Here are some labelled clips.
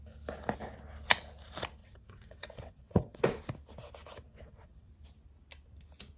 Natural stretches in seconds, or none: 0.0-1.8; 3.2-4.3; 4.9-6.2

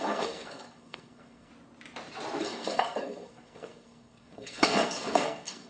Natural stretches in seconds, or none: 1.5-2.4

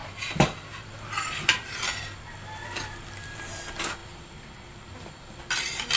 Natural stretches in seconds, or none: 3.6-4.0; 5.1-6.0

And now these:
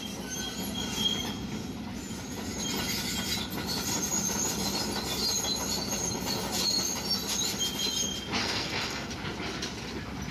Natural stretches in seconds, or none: 0.0-8.4; 9.1-10.3

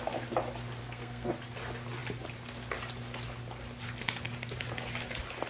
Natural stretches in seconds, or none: 0.0-0.8; 1.3-5.5